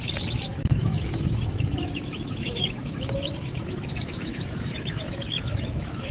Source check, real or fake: fake